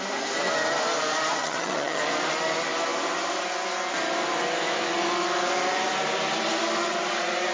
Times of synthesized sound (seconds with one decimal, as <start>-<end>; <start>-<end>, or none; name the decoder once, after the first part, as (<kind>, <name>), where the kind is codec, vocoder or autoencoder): 1.4-2.0 (vocoder, HiFi-GAN)